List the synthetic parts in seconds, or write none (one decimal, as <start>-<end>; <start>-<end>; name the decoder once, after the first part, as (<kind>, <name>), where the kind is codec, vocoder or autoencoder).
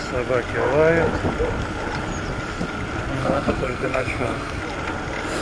3.2-4.6 (codec, SNAC)